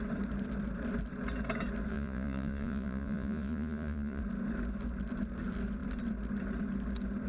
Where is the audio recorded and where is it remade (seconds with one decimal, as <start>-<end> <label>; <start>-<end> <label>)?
0.0-1.9 recorded; 1.9-4.2 remade; 4.2-7.3 recorded